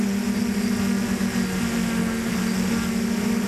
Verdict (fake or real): real